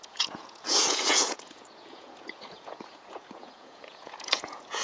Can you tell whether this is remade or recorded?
remade